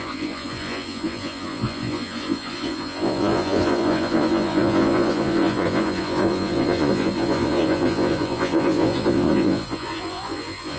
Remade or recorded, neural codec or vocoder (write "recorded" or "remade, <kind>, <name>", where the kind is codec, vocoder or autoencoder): remade, vocoder, Vocos